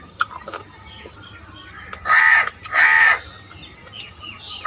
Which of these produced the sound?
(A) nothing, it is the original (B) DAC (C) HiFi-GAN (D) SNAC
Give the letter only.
A